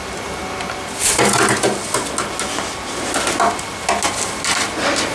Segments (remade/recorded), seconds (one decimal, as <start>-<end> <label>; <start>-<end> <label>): 0.0-5.1 recorded